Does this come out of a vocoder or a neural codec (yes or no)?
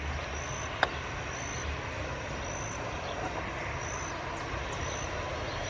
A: no